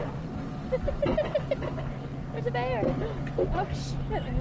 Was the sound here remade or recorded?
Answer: recorded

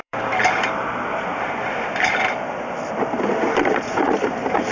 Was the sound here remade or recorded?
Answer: remade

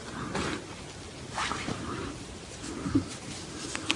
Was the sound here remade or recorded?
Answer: recorded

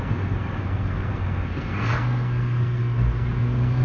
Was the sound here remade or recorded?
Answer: remade